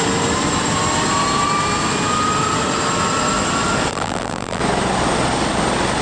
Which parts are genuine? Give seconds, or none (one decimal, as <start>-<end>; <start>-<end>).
0.0-3.9; 4.6-6.0